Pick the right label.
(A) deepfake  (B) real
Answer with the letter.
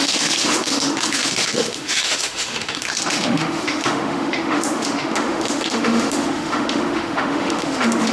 A